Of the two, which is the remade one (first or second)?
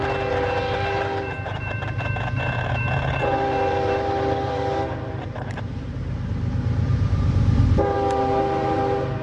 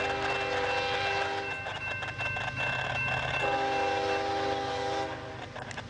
first